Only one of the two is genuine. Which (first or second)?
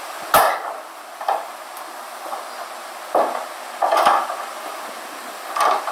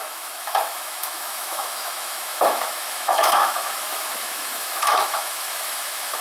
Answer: first